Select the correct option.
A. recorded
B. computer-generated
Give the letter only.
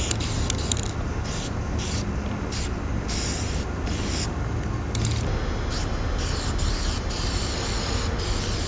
A